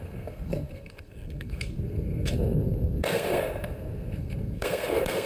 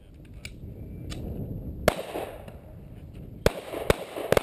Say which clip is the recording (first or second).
second